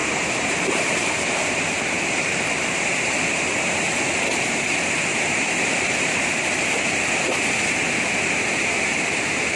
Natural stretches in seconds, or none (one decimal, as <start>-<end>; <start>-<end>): 3.6-5.1; 6.6-9.6